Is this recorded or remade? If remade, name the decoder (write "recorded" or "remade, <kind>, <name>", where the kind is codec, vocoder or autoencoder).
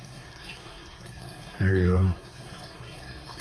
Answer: remade, codec, SNAC